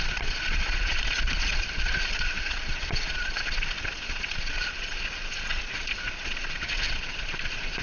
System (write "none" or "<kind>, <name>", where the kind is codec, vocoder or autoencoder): vocoder, Vocos